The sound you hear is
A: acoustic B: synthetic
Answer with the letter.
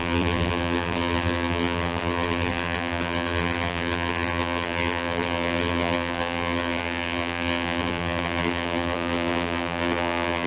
B